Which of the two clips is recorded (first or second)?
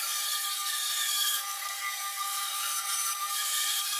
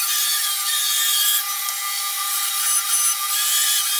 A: second